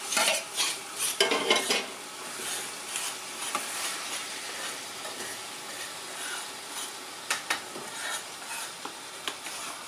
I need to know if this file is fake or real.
real